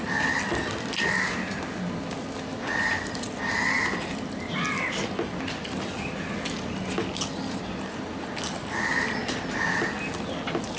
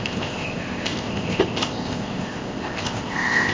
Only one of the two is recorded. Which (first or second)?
first